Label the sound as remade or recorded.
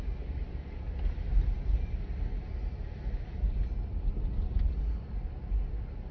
recorded